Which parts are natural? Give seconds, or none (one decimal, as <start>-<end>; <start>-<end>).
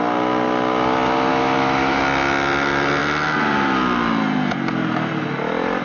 0.0-1.3; 2.0-5.8